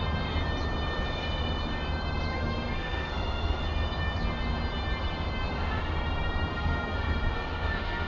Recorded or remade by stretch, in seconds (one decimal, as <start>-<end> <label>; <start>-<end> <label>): 0.0-2.3 recorded; 2.3-3.6 remade; 3.6-6.5 recorded; 6.5-8.1 remade